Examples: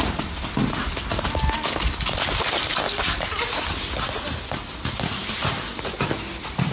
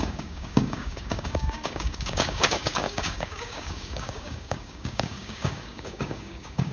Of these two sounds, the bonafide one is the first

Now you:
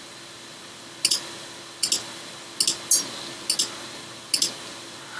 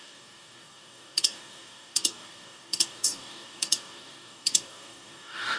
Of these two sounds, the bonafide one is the first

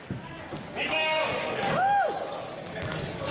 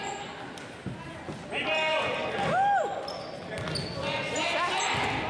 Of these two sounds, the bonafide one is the second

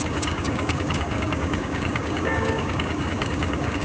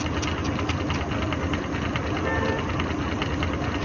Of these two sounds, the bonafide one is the second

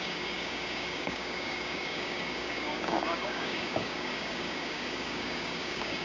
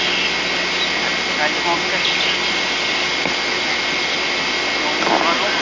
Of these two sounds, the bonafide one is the second